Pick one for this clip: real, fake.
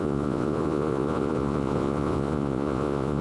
fake